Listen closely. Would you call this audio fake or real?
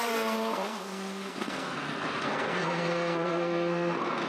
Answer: fake